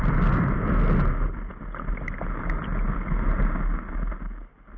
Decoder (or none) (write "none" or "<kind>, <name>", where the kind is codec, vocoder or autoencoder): none